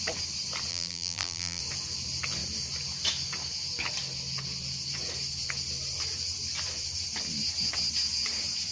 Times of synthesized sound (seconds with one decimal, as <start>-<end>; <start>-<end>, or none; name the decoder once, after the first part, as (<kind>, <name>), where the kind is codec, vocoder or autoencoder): 0.7-1.6 (vocoder, BigVGAN v2)